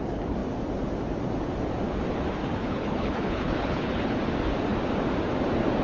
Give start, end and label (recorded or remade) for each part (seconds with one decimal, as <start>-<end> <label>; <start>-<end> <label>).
0.0-2.4 recorded; 2.4-4.2 remade; 4.2-5.8 recorded